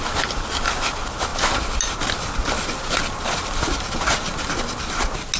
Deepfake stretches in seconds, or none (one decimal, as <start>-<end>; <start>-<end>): none